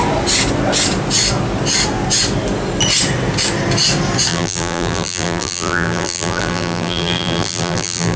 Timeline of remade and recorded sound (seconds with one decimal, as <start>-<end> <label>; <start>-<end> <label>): 0.0-4.3 recorded; 4.3-8.2 remade

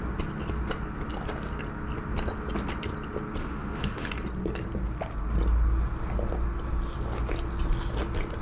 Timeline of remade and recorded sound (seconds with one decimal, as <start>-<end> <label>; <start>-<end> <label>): 0.0-3.4 recorded; 3.4-4.1 remade; 4.1-8.4 recorded

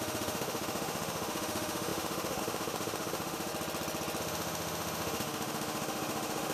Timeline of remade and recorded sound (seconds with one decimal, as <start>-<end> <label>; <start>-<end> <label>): 0.0-3.5 remade; 3.5-4.2 recorded; 4.2-6.5 remade

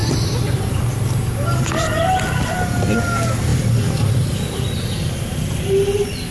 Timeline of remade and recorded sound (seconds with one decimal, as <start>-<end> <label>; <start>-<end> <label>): 0.0-1.2 remade; 1.2-3.5 recorded; 3.5-4.3 remade; 4.3-6.3 recorded

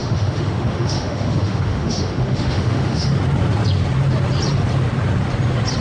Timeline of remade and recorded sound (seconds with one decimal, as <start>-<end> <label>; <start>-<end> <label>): 0.0-3.1 remade; 3.1-5.8 recorded

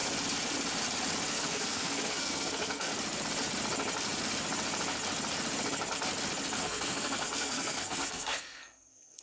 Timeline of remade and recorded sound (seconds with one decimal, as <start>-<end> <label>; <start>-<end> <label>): 0.0-1.3 recorded; 1.3-2.9 remade; 2.9-6.6 recorded; 6.6-9.2 remade

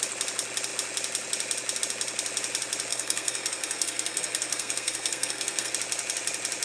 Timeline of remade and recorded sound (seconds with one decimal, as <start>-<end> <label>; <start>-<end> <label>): 0.0-2.9 recorded; 2.9-5.7 remade; 5.7-6.6 recorded

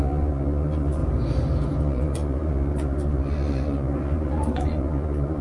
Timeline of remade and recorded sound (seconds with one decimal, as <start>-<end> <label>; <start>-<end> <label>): 0.0-1.0 remade; 1.0-1.8 recorded; 1.8-5.4 remade